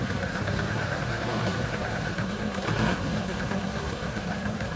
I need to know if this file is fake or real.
fake